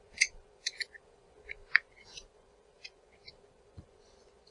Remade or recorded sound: remade